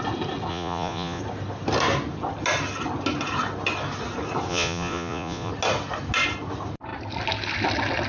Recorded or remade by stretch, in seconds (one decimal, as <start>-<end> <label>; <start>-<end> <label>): 0.0-0.5 recorded; 0.5-1.2 remade; 1.2-4.5 recorded; 4.5-5.5 remade; 5.5-8.1 recorded